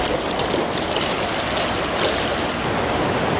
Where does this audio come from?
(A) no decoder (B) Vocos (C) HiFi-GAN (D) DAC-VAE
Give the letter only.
A